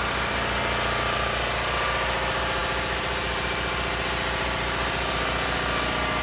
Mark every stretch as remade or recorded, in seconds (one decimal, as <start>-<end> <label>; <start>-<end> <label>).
0.0-6.2 recorded